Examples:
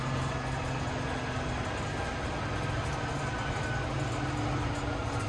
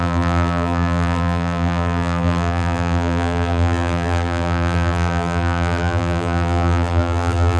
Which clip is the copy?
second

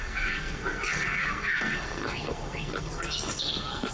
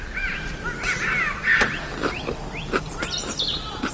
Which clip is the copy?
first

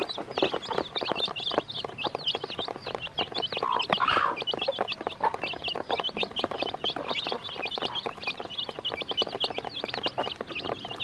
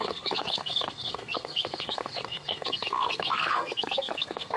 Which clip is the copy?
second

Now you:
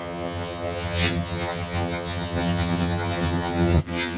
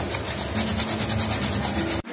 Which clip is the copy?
first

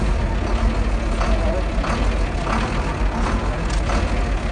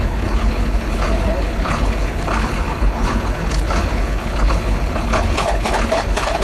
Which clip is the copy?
second